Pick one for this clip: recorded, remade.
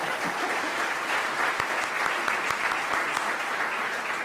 recorded